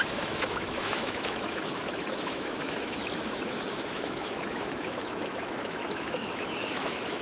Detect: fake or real fake